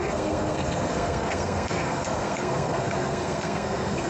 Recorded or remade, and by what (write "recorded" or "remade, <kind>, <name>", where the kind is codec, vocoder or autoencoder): remade, codec, SNAC